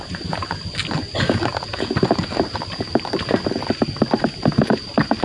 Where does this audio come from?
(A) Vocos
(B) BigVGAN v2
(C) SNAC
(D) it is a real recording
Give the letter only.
D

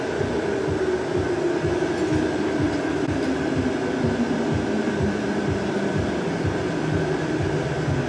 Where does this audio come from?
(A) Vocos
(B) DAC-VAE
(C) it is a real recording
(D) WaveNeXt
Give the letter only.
C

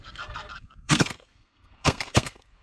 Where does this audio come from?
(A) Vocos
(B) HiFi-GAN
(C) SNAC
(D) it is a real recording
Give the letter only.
C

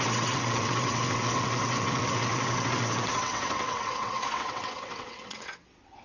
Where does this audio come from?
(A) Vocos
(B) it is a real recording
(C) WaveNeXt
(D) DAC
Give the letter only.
C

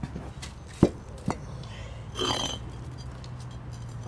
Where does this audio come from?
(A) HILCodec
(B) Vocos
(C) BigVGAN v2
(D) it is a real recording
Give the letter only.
D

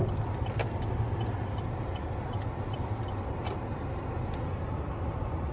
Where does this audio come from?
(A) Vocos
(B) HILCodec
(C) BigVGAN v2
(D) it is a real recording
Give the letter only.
D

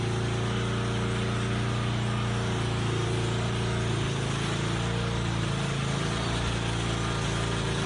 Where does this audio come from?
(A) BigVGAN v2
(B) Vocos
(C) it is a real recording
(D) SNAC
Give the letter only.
C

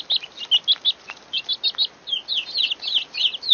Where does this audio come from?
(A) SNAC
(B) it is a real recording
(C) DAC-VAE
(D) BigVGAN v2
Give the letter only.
B